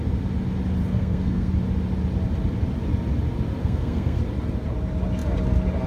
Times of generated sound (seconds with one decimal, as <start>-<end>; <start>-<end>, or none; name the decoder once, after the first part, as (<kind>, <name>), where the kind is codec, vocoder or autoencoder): 0.8-1.5 (codec, SNAC); 3.6-4.2